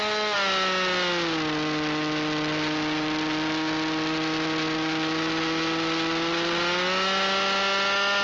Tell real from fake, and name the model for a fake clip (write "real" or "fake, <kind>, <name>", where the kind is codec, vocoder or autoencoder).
real